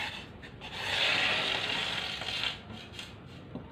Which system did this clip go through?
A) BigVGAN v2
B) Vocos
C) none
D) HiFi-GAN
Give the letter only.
C